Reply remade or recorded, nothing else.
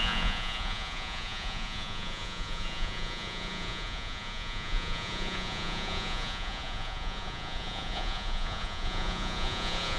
remade